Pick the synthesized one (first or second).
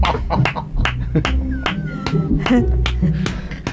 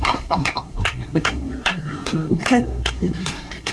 second